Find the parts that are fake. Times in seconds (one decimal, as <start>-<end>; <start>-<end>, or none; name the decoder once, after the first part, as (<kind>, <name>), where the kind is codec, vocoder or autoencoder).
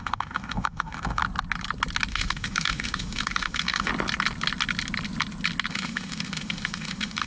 0.0-1.2 (autoencoder, DAC-VAE); 2.1-3.9; 5.7-7.3